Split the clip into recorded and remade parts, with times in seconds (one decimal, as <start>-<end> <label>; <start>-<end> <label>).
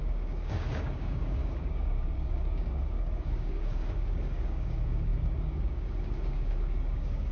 0.0-7.3 remade